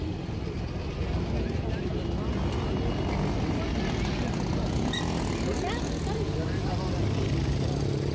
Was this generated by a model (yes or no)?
no